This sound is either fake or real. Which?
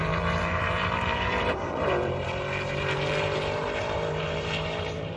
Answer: fake